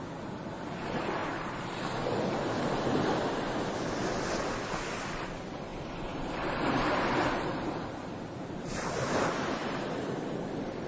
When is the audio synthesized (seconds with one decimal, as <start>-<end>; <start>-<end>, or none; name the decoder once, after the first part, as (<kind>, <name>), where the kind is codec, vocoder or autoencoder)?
5.7-10.9 (vocoder, BigVGAN v2)